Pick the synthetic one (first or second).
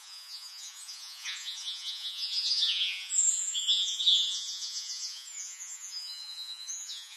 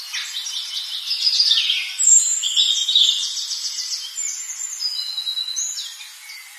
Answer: first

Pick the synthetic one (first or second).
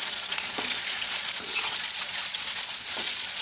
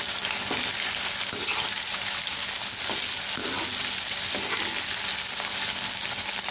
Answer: first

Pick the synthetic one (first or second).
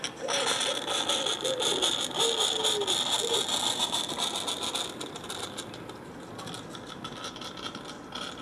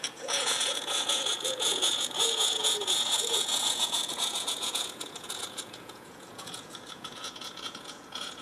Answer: second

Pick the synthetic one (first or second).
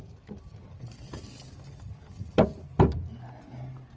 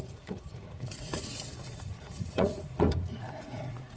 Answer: second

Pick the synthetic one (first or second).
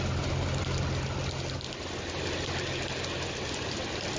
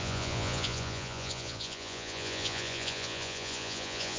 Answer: second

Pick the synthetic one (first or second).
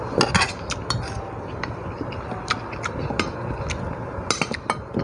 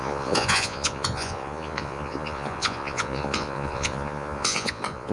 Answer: second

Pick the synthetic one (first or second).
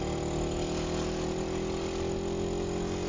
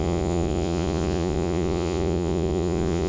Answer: second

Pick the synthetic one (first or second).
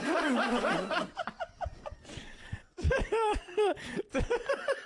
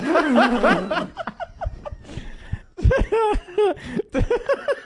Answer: first